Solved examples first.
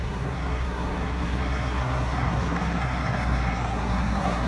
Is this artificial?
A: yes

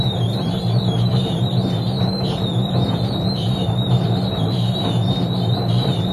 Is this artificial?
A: no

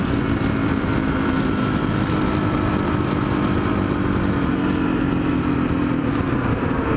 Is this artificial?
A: no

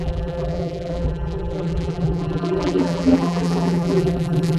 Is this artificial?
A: yes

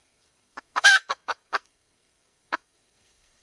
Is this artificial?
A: yes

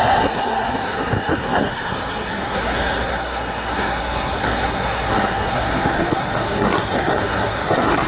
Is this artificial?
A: yes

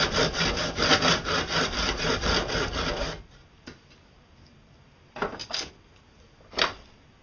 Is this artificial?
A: no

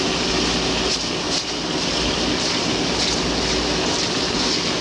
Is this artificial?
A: no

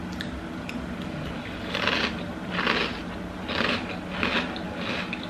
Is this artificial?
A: no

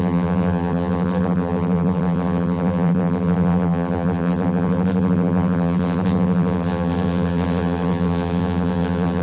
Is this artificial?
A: yes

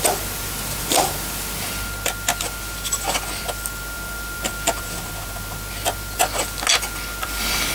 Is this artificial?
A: no